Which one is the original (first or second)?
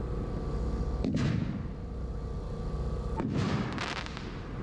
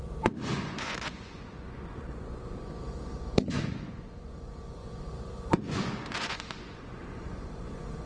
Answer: first